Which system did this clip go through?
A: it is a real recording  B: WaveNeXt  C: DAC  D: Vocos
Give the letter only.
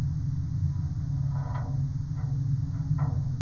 A